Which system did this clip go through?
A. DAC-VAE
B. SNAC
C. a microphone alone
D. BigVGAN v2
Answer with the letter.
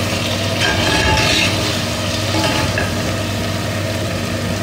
C